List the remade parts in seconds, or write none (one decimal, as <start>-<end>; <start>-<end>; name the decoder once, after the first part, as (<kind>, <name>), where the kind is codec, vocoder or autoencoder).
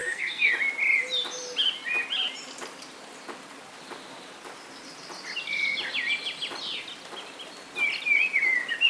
0.0-0.5 (codec, SNAC)